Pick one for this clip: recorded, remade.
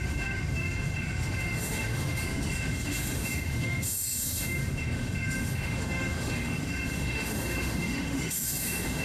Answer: remade